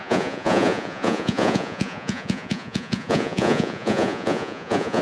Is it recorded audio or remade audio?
remade